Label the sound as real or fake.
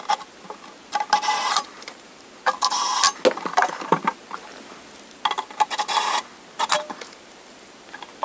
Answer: real